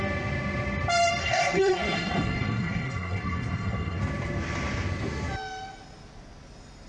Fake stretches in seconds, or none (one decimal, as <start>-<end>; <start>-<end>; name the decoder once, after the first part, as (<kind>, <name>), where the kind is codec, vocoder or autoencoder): 1.2-4.0 (codec, SNAC)